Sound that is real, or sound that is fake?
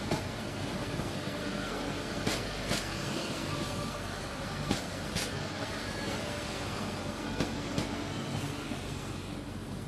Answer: fake